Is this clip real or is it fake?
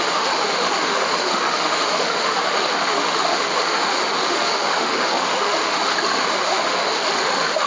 fake